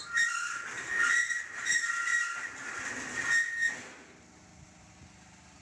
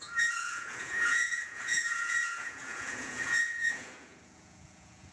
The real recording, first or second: first